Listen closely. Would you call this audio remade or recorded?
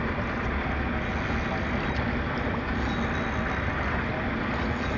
recorded